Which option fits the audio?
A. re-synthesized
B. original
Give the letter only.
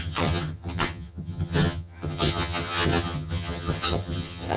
A